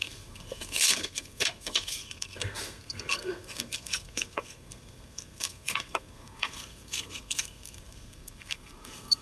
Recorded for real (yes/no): no